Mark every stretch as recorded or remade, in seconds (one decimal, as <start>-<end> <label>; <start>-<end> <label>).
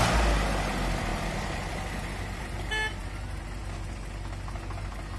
0.0-5.2 recorded